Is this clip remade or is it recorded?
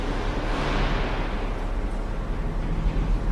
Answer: recorded